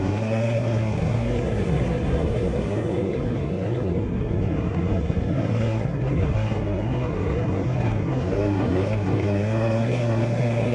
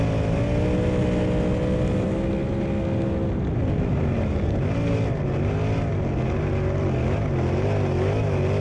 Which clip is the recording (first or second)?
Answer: second